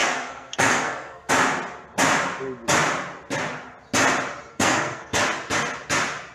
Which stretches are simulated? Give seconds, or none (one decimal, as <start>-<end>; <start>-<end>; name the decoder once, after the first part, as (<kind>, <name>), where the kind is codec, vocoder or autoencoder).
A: 0.0-1.3 (codec, SNAC); 4.5-5.2

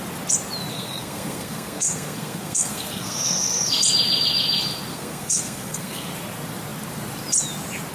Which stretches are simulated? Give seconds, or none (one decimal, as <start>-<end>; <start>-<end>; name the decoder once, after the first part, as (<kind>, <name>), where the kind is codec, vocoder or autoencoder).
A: 0.7-3.8 (codec, SNAC); 4.9-6.1

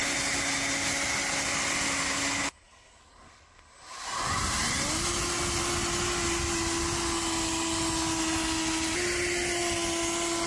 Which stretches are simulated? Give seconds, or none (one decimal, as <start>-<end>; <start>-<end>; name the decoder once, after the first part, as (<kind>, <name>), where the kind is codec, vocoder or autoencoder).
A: none

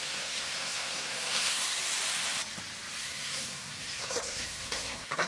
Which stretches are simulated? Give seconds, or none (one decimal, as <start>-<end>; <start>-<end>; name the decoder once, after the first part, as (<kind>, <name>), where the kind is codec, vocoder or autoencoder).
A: 0.0-1.8 (codec, SNAC); 3.0-5.3

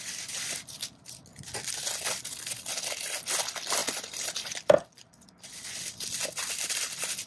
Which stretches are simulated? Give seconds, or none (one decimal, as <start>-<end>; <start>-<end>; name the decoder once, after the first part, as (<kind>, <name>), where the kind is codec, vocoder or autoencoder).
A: none

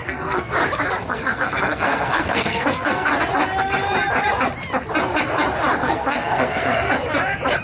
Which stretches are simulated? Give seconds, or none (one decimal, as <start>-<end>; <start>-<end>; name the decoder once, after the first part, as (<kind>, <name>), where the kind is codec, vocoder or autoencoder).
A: 0.0-0.5 (codec, SNAC); 1.1-3.1; 5.8-6.9

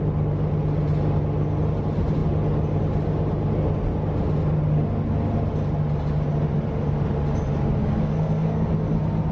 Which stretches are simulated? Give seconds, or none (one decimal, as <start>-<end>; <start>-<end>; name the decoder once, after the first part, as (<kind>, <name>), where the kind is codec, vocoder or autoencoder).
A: 7.8-8.7 (codec, SNAC)

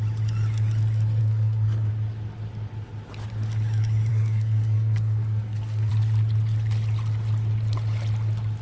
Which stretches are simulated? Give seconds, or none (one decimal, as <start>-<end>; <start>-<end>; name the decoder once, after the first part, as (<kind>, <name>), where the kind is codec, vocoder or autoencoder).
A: 1.2-1.9 (codec, SNAC); 4.1-5.9